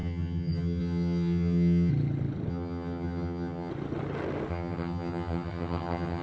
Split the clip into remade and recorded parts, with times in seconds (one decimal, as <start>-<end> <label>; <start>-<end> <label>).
0.0-1.9 remade; 1.9-2.5 recorded; 2.5-3.7 remade; 3.7-4.5 recorded; 4.5-6.2 remade